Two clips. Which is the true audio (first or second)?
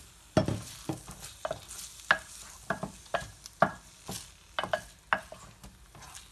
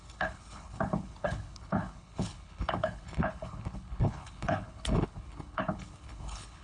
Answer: first